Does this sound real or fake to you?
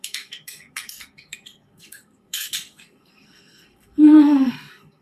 fake